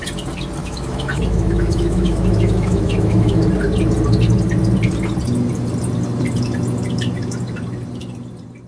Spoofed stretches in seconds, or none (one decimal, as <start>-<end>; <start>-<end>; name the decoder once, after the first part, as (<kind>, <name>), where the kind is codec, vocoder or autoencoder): 0.6-3.4 (autoencoder, DAC-VAE)